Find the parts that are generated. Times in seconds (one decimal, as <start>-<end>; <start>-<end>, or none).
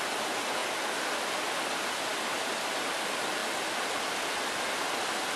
none